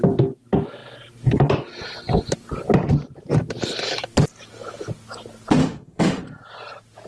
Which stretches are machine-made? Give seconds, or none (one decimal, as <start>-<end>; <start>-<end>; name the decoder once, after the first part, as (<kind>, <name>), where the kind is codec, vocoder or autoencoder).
5.6-6.2 (autoencoder, DAC-VAE)